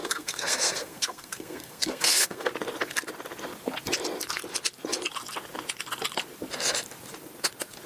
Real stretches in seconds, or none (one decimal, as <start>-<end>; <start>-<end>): 2.5-7.9